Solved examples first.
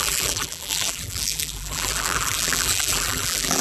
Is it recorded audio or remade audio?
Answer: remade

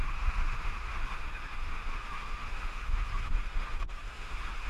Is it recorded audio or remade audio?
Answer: remade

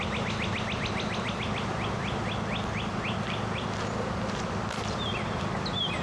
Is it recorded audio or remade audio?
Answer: recorded